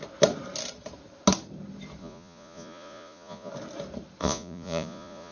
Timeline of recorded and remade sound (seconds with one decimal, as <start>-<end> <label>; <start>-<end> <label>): 0.0-2.0 recorded; 2.0-3.5 remade; 3.5-4.2 recorded; 4.2-5.3 remade